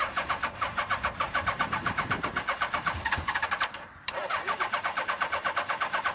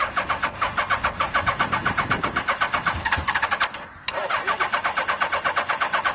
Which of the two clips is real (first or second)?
second